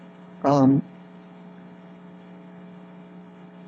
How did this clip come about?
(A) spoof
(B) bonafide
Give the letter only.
A